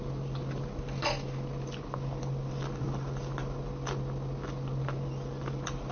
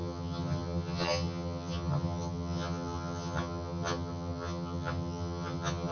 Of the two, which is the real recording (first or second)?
first